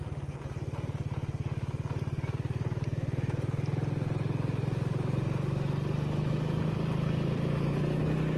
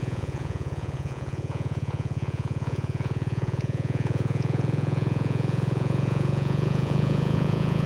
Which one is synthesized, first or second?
second